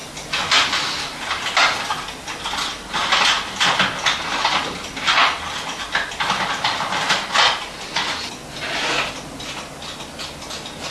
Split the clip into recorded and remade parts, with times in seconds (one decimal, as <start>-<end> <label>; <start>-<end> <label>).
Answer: 0.0-10.9 recorded